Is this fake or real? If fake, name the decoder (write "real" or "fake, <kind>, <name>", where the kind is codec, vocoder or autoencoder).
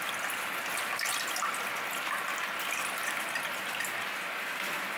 real